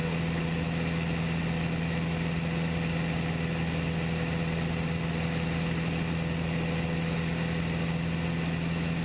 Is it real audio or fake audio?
real